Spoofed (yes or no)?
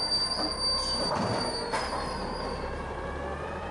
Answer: no